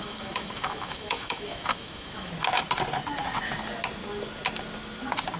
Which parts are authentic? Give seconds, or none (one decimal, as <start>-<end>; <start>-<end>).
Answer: 2.3-5.4